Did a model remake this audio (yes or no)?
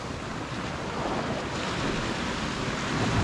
yes